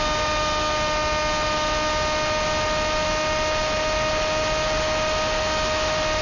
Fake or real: real